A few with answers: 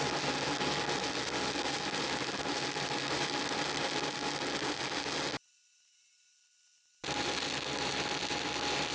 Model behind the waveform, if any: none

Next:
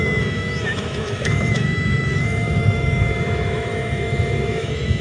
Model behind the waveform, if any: autoencoder, DAC-VAE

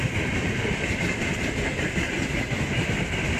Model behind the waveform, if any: vocoder, BigVGAN v2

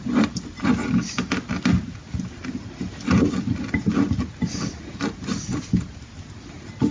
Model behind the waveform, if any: none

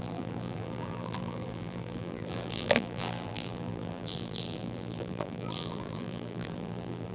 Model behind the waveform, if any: vocoder, BigVGAN v2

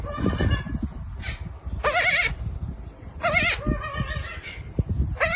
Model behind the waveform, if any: none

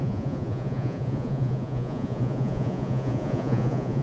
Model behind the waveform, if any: vocoder, Vocos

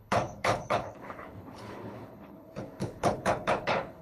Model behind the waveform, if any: codec, HILCodec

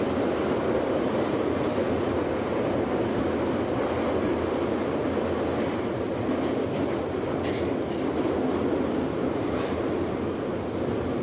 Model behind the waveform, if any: none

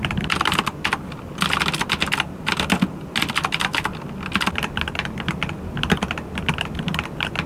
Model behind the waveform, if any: none